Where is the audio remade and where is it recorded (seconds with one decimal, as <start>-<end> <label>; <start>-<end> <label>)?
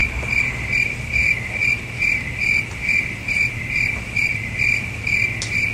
0.0-5.7 recorded